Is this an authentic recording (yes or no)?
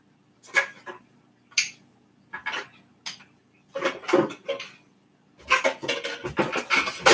yes